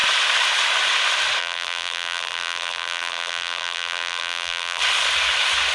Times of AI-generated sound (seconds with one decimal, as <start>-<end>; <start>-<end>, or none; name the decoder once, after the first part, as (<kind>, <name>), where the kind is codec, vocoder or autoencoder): 1.4-4.8 (vocoder, BigVGAN v2)